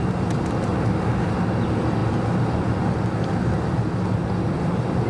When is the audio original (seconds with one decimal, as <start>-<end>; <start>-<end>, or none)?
0.0-5.1